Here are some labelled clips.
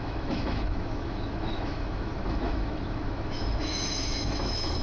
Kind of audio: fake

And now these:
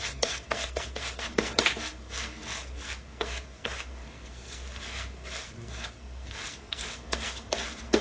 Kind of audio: fake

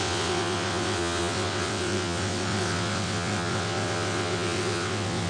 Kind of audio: fake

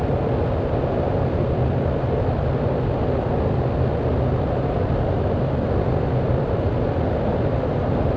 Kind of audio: real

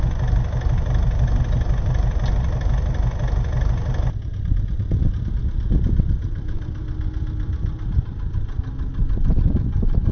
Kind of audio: real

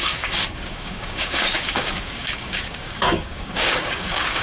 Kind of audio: fake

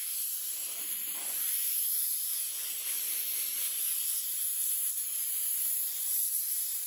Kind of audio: real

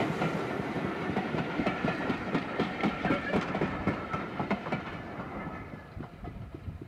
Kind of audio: fake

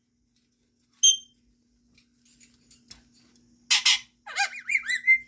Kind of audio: real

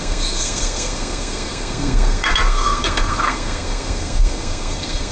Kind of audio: fake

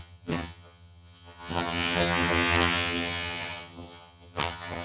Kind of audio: fake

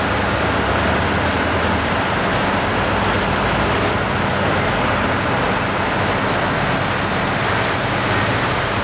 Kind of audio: real